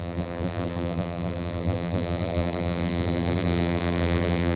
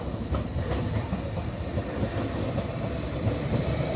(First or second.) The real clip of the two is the second